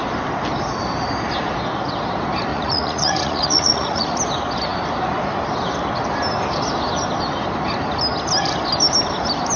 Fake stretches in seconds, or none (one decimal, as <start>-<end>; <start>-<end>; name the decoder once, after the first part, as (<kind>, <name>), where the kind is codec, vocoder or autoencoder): 2.5-4.2 (vocoder, Vocos)